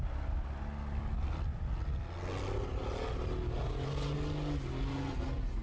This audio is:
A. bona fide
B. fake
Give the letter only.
A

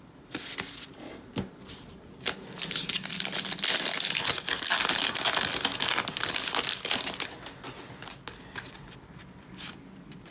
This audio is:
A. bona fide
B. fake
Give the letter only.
A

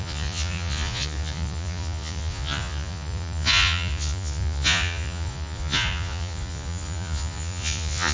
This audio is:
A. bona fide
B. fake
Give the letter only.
B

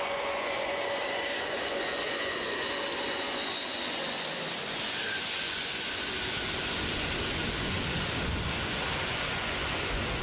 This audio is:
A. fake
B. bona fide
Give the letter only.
A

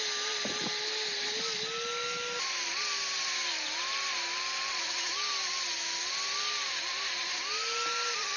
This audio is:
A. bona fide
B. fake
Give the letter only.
A